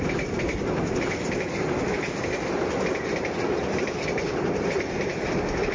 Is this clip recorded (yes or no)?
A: yes